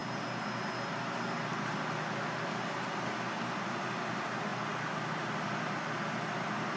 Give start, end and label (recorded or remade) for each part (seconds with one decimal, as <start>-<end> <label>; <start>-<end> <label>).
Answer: 0.0-6.8 recorded